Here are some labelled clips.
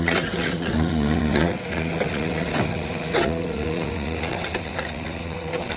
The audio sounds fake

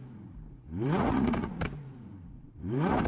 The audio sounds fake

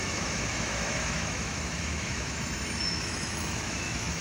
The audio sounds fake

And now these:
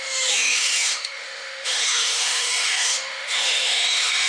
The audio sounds fake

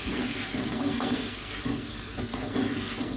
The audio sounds fake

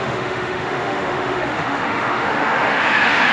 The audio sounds fake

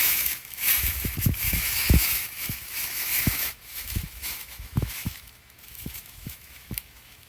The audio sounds fake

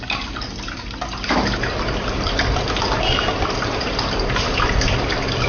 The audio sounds real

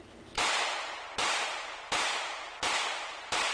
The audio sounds fake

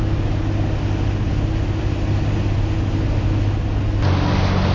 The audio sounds real